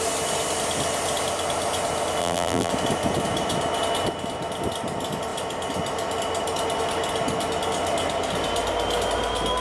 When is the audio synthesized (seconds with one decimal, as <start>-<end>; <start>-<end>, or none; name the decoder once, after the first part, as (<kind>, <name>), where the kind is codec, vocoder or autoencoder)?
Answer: 2.2-2.7 (vocoder, BigVGAN v2)